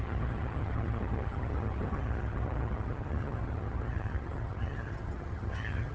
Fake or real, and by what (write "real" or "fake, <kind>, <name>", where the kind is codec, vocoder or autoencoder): fake, vocoder, HiFi-GAN